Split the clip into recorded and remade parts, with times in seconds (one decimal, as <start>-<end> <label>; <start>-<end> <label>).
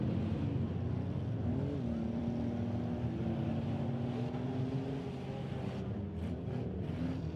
0.0-7.4 recorded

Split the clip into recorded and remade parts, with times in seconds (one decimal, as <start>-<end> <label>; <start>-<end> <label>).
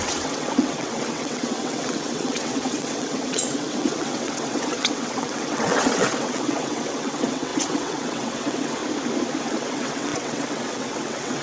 0.0-8.8 remade; 8.8-9.4 recorded; 9.4-11.4 remade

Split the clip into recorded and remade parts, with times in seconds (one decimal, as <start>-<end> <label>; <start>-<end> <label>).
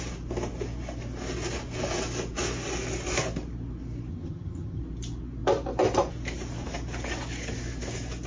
0.0-4.1 recorded; 4.1-4.8 remade; 4.8-8.3 recorded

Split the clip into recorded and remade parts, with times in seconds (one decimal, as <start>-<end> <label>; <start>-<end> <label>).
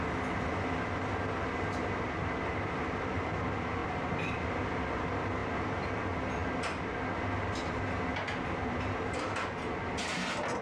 0.0-10.6 recorded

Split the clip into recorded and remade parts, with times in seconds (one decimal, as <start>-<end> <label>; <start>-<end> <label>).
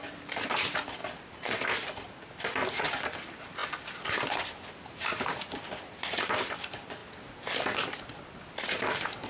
0.0-9.3 recorded